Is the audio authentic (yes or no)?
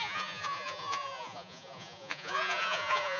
no